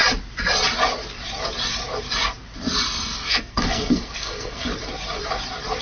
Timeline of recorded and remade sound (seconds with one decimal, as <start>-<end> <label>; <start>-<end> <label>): 0.0-3.3 recorded; 3.3-4.7 remade; 4.7-5.8 recorded